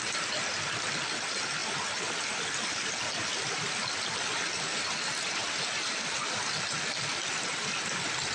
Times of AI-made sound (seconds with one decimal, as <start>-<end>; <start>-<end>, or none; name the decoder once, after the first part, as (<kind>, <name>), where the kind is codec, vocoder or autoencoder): none